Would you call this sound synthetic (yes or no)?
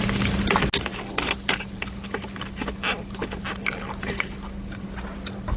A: no